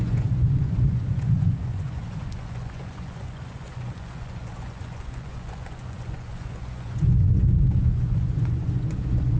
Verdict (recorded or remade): remade